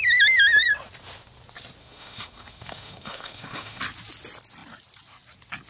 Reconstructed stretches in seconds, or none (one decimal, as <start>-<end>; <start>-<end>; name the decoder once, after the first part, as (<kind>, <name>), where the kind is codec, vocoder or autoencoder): 1.8-3.8 (autoencoder, DAC-VAE)